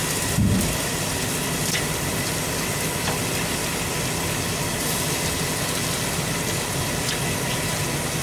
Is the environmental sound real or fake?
real